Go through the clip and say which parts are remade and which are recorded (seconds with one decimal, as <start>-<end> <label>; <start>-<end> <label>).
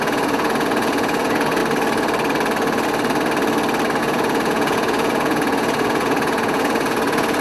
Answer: 0.0-1.6 remade; 1.6-4.0 recorded; 4.0-7.4 remade